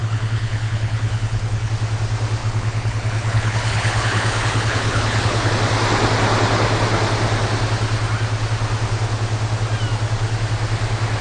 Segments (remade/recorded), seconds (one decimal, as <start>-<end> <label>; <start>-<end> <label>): 0.0-1.7 remade; 1.7-2.4 recorded; 2.4-5.5 remade; 5.5-11.2 recorded